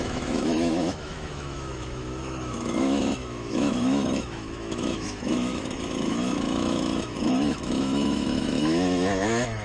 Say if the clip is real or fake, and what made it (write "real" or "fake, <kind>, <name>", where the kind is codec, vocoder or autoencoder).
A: fake, autoencoder, DAC-VAE